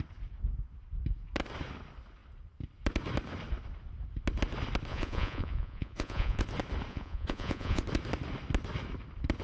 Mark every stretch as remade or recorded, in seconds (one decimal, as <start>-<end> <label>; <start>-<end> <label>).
0.0-4.9 recorded; 4.9-6.4 remade; 6.4-6.9 recorded; 6.9-7.8 remade; 7.8-9.4 recorded